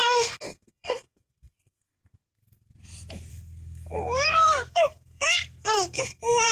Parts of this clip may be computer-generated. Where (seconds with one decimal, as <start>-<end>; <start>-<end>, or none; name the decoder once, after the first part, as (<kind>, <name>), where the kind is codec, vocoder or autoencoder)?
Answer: 0.0-2.7 (codec, SNAC); 3.3-6.5